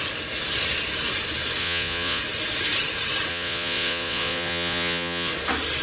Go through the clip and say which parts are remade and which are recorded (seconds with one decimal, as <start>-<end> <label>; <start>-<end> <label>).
0.0-1.6 recorded; 1.6-2.2 remade; 2.2-3.3 recorded; 3.3-5.3 remade; 5.3-5.8 recorded